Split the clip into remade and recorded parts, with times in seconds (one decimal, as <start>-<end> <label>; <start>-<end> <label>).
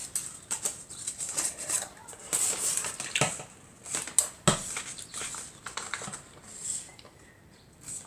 0.0-0.8 recorded; 0.8-2.2 remade; 2.2-5.5 recorded; 5.5-8.1 remade